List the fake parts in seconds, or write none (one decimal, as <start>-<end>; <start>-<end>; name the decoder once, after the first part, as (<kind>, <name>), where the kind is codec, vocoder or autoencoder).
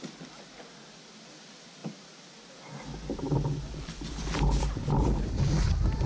none